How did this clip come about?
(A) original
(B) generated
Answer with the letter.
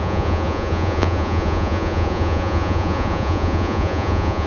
B